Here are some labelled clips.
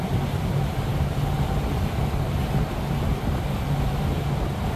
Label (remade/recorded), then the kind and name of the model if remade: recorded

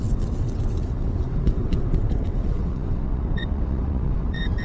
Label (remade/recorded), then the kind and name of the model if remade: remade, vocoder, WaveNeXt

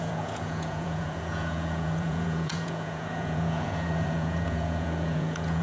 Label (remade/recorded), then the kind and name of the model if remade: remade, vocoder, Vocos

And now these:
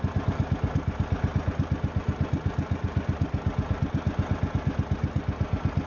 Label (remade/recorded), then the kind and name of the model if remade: recorded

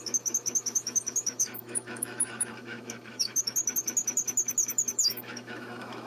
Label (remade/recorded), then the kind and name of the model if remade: remade, autoencoder, DAC-VAE